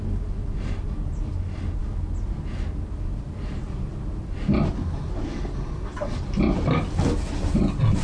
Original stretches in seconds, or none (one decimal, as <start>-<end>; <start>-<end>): 0.0-8.0